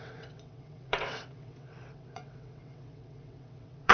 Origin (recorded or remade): remade